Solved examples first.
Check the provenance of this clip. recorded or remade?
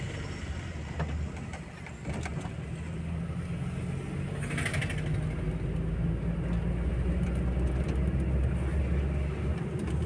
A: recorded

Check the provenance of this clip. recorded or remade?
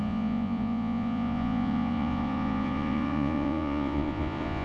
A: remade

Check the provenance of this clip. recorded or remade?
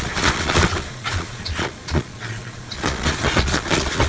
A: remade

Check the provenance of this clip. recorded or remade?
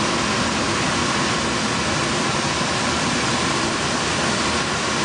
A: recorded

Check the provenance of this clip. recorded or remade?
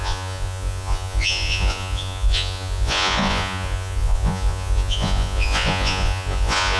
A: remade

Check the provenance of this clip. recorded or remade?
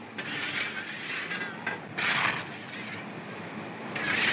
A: recorded